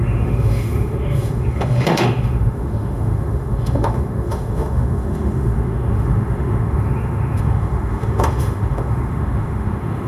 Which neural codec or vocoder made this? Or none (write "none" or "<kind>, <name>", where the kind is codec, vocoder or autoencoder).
autoencoder, DAC-VAE